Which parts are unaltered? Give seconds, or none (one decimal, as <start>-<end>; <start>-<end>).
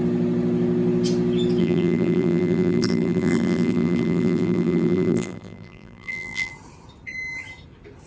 0.0-1.6; 6.5-8.1